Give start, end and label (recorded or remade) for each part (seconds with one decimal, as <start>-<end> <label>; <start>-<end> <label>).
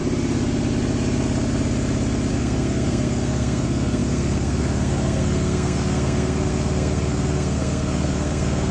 0.0-2.3 recorded; 2.3-8.7 remade